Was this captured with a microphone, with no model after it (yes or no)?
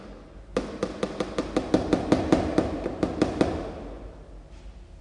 yes